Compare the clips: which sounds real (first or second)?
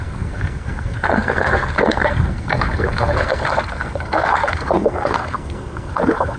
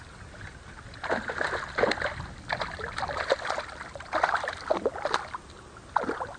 second